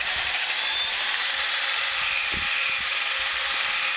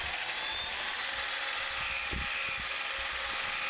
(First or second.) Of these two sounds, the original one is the second